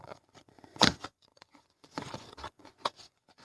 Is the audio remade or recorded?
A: remade